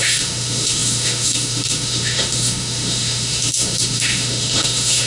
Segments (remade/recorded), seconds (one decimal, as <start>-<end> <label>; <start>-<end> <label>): 0.0-5.1 remade